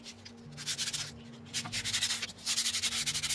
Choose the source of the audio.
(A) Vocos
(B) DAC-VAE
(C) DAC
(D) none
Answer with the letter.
D